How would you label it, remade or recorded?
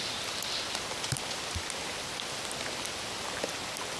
recorded